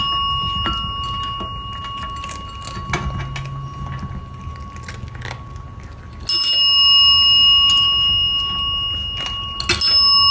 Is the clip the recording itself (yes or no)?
yes